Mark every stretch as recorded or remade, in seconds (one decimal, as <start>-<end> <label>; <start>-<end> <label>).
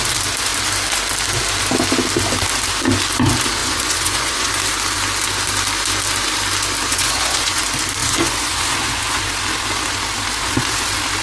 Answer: 0.0-3.6 recorded; 3.6-4.5 remade; 4.5-6.9 recorded; 6.9-7.6 remade; 7.6-8.0 recorded; 8.0-9.2 remade; 9.2-11.2 recorded